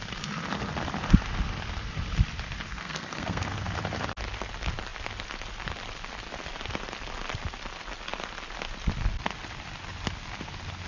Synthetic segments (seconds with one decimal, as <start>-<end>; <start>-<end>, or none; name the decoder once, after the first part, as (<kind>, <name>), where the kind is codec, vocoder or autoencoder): 2.7-3.5 (codec, SNAC)